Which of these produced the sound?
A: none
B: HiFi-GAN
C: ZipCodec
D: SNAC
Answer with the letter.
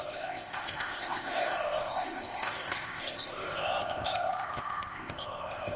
C